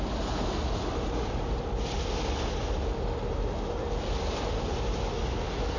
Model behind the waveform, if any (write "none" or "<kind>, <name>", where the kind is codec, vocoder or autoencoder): none